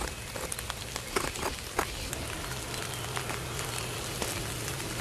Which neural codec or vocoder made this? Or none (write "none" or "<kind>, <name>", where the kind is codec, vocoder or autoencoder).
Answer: none